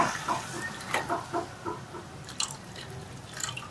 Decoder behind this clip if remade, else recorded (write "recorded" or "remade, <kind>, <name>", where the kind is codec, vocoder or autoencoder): remade, vocoder, BigVGAN v2